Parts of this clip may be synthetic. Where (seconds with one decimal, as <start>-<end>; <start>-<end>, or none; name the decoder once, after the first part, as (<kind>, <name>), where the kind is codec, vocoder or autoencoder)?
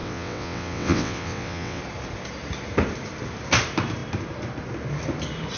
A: 0.0-1.8 (vocoder, WaveNeXt)